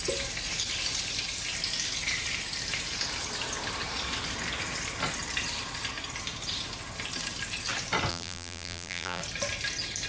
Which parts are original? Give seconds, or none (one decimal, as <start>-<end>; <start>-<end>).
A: 0.0-8.1; 9.2-10.1